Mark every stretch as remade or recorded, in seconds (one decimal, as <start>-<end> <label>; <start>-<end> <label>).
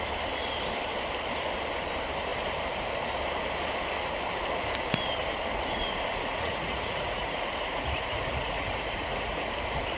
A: 0.0-6.1 recorded; 6.1-9.5 remade; 9.5-10.0 recorded